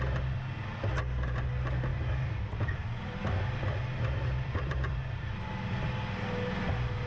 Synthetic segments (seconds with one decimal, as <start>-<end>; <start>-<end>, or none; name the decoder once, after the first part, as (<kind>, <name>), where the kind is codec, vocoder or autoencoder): 1.9-5.3 (vocoder, BigVGAN v2)

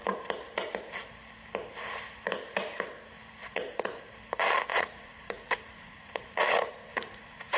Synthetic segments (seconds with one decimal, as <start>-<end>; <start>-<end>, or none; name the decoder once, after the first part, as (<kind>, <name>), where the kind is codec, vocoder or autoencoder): 3.4-4.0 (vocoder, Vocos); 4.7-7.6

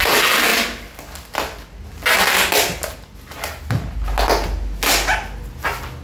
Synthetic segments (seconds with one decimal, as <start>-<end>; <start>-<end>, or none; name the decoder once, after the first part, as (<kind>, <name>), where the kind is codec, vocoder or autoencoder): none